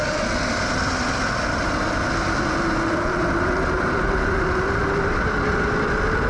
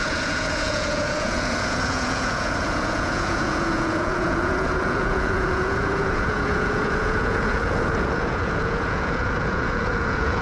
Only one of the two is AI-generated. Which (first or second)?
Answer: second